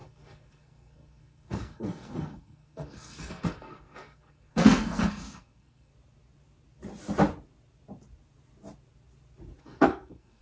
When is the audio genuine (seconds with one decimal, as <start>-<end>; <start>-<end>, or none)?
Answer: 5.9-9.6